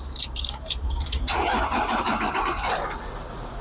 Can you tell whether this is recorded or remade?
remade